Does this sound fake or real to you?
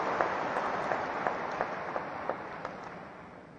real